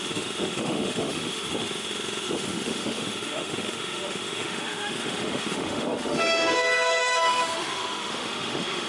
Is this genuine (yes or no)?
no